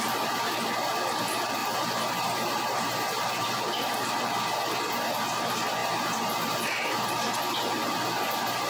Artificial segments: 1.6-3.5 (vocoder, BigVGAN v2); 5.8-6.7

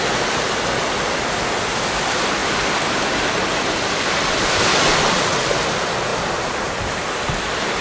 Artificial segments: none

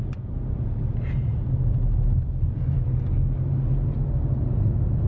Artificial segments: none

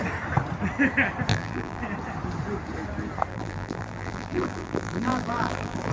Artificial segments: 1.3-1.8 (vocoder, BigVGAN v2); 3.3-5.9

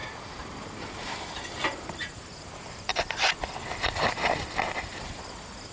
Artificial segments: 0.0-2.9 (vocoder, BigVGAN v2); 4.8-5.7

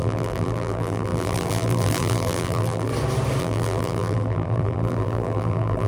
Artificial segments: 0.0-2.9 (vocoder, BigVGAN v2); 3.4-5.9